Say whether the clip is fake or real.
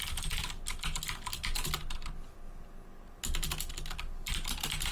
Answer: real